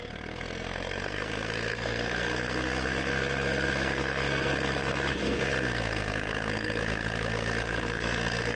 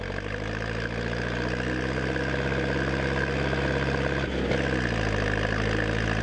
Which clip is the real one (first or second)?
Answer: second